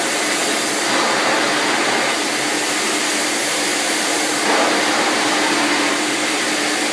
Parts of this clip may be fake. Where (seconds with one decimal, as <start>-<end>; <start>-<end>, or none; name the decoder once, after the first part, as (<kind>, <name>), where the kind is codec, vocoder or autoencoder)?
3.7-6.5 (vocoder, BigVGAN v2)